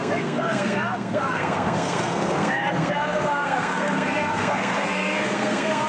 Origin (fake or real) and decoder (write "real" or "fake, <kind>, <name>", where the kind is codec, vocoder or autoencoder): fake, codec, SNAC